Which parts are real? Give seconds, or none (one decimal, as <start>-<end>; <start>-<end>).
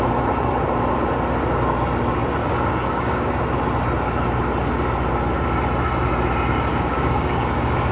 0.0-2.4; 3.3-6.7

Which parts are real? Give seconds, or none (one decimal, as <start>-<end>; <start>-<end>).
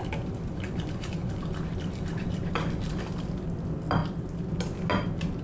0.0-5.4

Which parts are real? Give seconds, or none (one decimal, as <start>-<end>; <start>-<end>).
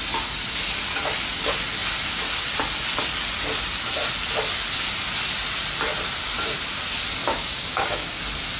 0.0-7.2; 8.2-8.6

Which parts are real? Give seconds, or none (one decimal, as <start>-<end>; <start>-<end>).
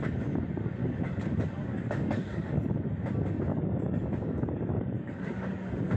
0.0-0.8; 2.8-3.5